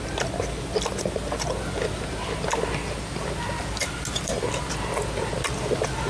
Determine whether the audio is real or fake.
real